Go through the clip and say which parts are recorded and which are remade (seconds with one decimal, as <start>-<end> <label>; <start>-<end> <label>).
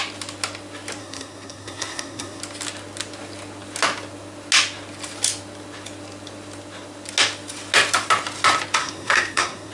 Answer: 0.0-1.0 recorded; 1.0-2.4 remade; 2.4-8.8 recorded; 8.8-9.7 remade